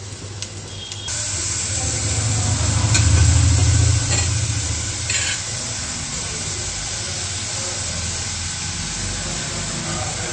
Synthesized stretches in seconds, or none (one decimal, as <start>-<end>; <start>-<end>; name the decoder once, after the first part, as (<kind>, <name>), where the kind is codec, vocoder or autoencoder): none